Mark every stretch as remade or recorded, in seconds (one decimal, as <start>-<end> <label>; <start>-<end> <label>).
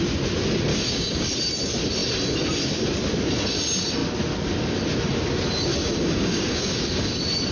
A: 0.0-0.7 recorded; 0.7-1.3 remade; 1.3-5.7 recorded; 5.7-7.1 remade; 7.1-7.5 recorded